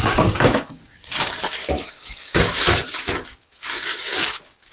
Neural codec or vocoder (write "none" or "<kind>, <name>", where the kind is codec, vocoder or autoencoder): codec, DAC